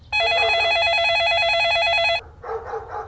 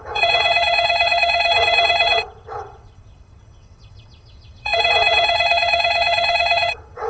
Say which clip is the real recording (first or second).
first